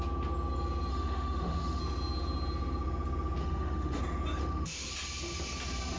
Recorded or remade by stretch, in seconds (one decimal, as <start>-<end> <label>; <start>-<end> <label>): 0.0-0.9 recorded; 0.9-1.8 remade; 1.8-3.4 recorded; 3.4-4.0 remade; 4.0-4.4 recorded; 4.4-4.9 remade; 4.9-6.0 recorded